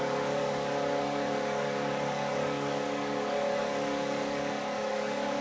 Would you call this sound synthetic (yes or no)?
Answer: yes